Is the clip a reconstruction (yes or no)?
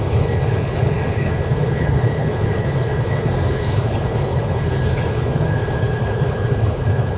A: yes